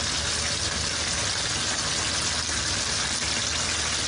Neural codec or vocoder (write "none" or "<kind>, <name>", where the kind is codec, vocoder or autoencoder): none